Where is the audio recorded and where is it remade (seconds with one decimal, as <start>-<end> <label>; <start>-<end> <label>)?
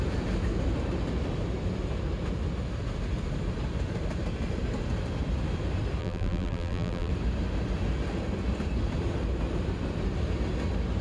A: 0.0-6.0 recorded; 6.0-7.1 remade; 7.1-11.0 recorded